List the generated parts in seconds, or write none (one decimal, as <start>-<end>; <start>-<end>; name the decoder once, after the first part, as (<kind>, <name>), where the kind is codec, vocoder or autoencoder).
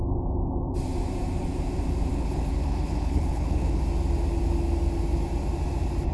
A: 2.1-3.8 (codec, HILCodec)